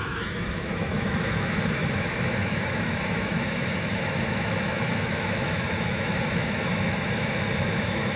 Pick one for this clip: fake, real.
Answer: fake